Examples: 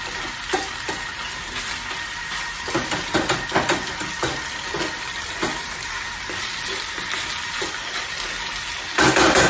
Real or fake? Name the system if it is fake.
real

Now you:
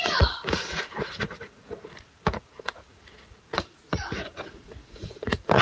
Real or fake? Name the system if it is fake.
fake, vocoder, Vocos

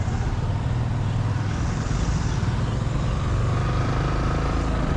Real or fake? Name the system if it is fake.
real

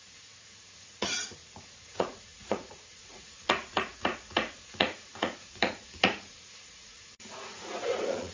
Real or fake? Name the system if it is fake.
fake, vocoder, Vocos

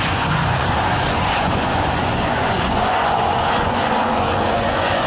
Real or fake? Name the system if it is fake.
fake, vocoder, Vocos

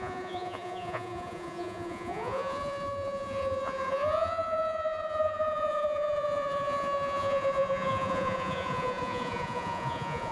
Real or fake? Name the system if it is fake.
fake, vocoder, Vocos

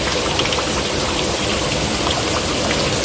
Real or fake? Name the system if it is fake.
real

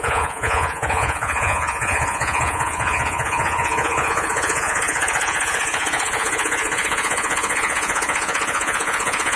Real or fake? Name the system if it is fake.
fake, vocoder, Vocos